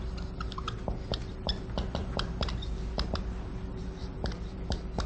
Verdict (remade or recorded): recorded